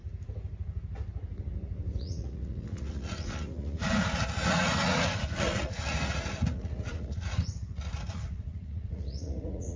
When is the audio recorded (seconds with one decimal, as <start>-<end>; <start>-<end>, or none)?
0.0-2.0